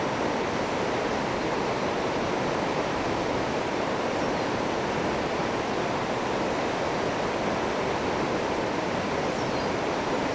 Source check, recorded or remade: recorded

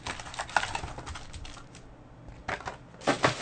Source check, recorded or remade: recorded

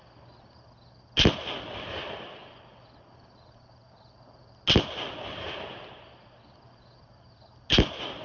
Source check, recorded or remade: recorded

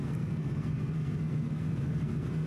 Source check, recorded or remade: remade